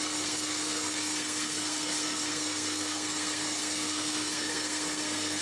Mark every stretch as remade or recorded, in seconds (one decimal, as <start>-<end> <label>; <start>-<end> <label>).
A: 0.0-5.4 remade